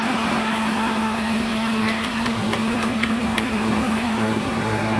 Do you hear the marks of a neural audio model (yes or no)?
yes